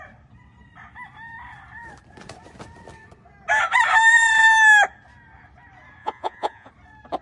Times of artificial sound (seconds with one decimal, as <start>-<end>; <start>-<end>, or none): 6.0-6.7